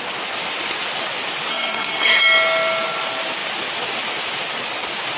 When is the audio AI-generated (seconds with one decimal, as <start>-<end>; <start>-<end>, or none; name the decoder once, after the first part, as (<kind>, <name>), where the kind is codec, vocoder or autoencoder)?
1.5-2.2 (codec, SNAC)